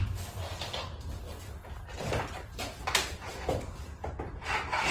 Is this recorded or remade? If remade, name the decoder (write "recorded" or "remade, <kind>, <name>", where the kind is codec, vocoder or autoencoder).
recorded